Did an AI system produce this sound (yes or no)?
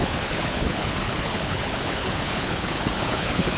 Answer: yes